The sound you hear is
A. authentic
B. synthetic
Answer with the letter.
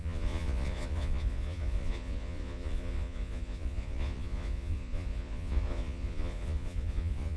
B